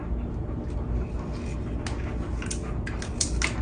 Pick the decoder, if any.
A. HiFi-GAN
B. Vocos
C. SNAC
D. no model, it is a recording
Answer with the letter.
D